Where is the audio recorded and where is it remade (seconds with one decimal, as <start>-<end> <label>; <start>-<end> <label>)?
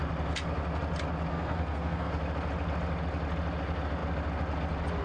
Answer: 0.0-1.3 recorded; 1.3-2.1 remade; 2.1-5.0 recorded